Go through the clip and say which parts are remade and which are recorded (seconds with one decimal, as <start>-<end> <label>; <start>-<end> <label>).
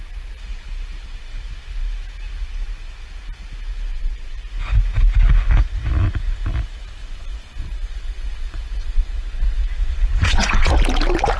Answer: 0.0-3.9 recorded; 3.9-4.5 remade; 4.5-7.0 recorded; 7.0-10.7 remade; 10.7-11.4 recorded